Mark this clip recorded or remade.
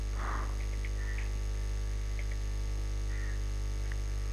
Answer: recorded